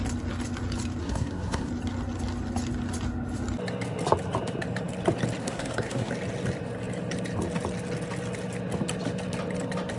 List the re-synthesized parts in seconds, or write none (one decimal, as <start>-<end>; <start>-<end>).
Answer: 1.0-1.7; 5.4-6.1